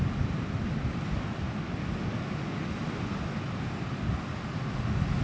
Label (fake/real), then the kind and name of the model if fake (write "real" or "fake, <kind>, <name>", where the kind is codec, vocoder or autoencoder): real